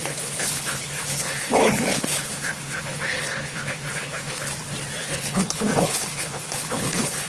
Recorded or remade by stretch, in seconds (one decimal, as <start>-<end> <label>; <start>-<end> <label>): 0.0-4.4 remade; 4.4-5.0 recorded; 5.0-7.3 remade